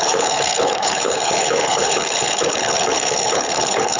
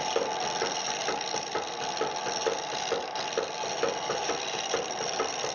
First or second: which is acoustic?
second